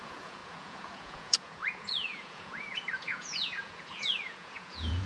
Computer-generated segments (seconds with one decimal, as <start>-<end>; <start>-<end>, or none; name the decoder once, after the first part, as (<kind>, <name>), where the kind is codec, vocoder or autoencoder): 0.0-5.1 (vocoder, Vocos)